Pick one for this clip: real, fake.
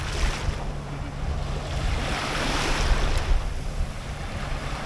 real